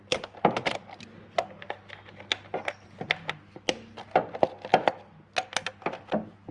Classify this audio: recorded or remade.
recorded